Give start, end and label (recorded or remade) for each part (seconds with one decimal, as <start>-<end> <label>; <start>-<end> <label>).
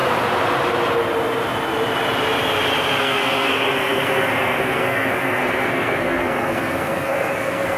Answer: 0.0-3.0 recorded; 3.0-7.8 remade